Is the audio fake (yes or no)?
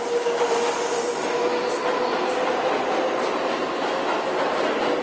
no